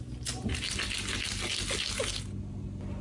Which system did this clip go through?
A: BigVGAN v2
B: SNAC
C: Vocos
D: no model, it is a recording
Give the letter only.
D